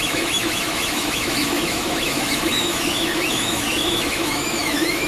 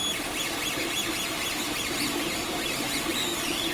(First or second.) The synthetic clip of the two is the first